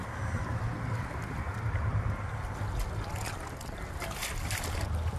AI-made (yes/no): no